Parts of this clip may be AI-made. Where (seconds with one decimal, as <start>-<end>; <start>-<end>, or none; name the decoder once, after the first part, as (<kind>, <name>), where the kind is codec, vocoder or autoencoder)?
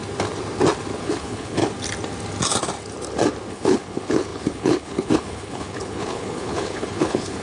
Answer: 1.0-1.6 (codec, HILCodec); 3.5-7.4